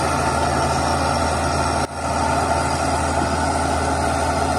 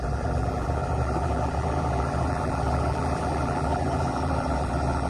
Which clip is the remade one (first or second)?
second